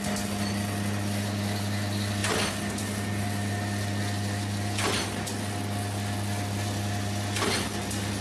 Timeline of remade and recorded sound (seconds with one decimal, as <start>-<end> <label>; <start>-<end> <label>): 0.0-8.2 recorded